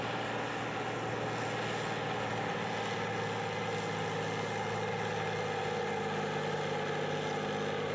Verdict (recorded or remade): recorded